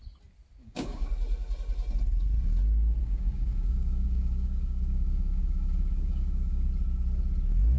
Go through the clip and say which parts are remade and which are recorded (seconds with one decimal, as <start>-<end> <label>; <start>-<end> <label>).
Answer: 0.0-0.6 recorded; 0.6-1.1 remade; 1.1-3.0 recorded; 3.0-6.7 remade; 6.7-7.8 recorded